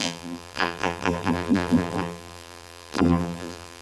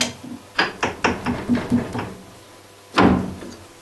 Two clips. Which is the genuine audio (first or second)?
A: second